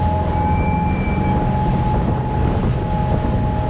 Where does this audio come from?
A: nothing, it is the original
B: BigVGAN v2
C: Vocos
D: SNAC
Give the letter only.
A